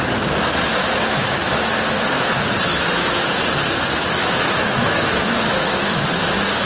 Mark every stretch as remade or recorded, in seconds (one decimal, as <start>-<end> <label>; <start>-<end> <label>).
0.0-0.8 recorded; 0.8-1.7 remade; 1.7-2.7 recorded; 2.7-3.3 remade; 3.3-4.2 recorded; 4.2-6.7 remade